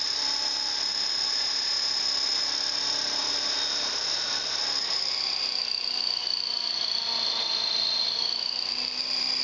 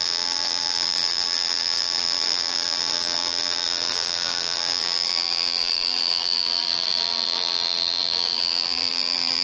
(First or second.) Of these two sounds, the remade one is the second